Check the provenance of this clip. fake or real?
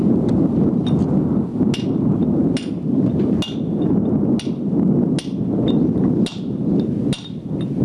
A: real